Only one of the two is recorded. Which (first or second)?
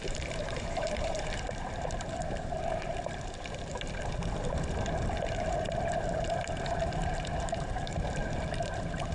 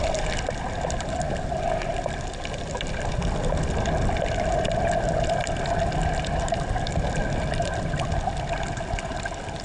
second